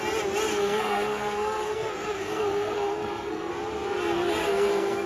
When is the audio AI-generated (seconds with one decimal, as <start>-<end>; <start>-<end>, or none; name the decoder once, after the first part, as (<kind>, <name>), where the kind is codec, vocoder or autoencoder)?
0.5-3.5 (codec, SNAC); 4.4-5.1

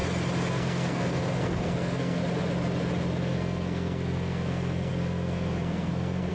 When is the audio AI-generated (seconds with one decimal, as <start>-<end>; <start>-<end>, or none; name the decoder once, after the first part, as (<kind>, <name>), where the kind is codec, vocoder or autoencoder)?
0.5-2.2 (codec, SNAC); 3.2-6.3

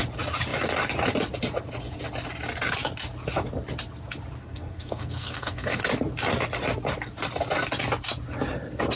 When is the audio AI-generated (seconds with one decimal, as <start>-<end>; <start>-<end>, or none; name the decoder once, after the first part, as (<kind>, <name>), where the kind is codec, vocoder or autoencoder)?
4.4-5.8 (codec, SNAC)

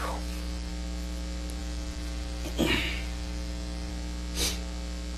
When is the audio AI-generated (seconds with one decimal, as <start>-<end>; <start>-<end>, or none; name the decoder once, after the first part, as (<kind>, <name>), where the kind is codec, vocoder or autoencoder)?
0.0-0.7 (autoencoder, DAC-VAE); 1.6-3.9

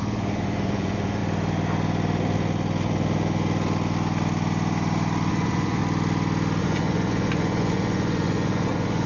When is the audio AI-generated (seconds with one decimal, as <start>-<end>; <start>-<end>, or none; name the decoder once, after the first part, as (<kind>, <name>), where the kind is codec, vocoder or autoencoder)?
0.0-1.2 (vocoder, Vocos); 5.3-5.8; 6.6-9.1

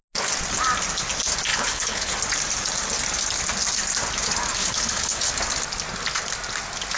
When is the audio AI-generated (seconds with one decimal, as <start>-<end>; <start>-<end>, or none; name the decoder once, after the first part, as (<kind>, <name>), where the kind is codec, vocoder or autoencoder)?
1.5-2.1 (codec, HILCodec); 4.6-5.3